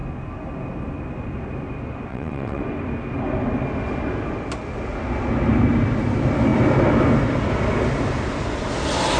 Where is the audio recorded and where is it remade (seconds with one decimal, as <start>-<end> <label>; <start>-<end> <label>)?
0.0-2.1 recorded; 2.1-2.6 remade; 2.6-9.2 recorded